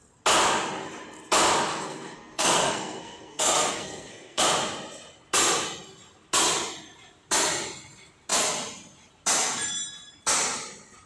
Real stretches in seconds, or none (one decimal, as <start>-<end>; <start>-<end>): 0.0-1.7; 4.4-11.1